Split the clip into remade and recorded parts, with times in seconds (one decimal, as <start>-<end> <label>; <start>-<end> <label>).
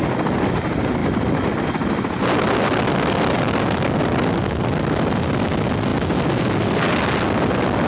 0.0-7.9 recorded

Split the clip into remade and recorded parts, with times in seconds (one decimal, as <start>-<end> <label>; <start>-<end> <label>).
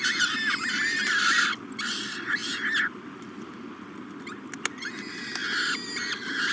0.0-6.5 recorded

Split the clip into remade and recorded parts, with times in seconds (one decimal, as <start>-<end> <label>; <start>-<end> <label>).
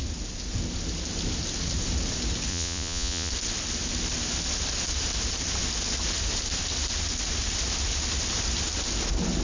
0.0-2.5 recorded; 2.5-3.3 remade; 3.3-9.4 recorded